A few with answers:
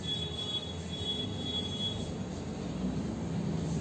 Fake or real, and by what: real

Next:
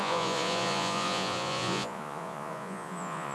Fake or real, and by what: fake, vocoder, Vocos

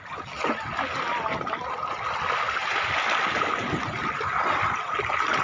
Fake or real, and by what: real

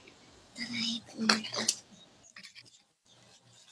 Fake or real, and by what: real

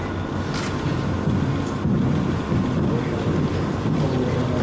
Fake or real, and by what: real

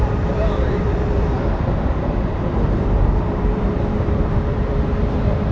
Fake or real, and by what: fake, vocoder, BigVGAN v2